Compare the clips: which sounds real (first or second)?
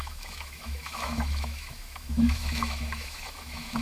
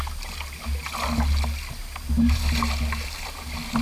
second